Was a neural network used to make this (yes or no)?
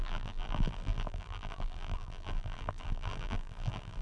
yes